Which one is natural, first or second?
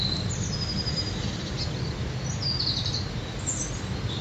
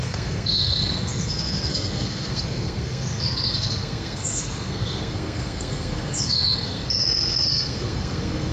first